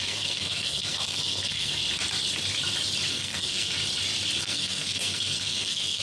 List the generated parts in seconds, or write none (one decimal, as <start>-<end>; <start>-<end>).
0.0-1.8; 3.1-3.8; 4.4-6.0

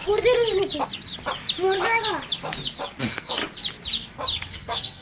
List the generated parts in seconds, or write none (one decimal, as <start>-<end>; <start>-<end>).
3.0-3.4; 4.5-5.0

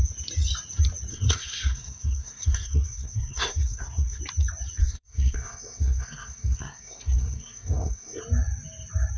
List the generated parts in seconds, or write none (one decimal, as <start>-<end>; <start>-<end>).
1.1-4.2; 4.8-8.2

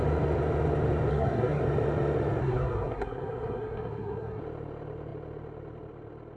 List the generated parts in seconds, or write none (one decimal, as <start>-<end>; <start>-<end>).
1.1-1.6; 2.4-4.4

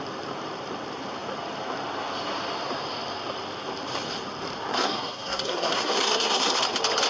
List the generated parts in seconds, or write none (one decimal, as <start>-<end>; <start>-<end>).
4.7-6.6

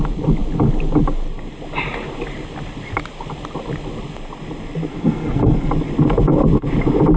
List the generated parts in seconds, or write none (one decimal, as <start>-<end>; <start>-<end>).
4.9-5.7